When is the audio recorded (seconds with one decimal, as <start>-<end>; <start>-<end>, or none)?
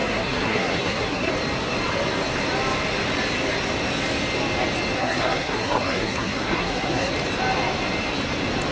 1.3-5.0; 7.1-8.7